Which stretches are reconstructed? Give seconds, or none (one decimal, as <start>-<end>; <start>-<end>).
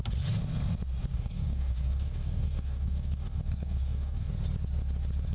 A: 1.1-4.3